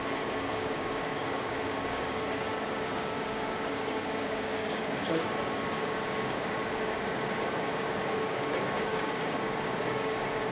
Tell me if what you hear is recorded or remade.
remade